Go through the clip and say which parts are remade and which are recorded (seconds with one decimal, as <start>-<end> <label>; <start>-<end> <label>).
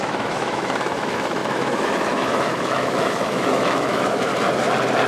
0.0-4.3 remade; 4.3-5.1 recorded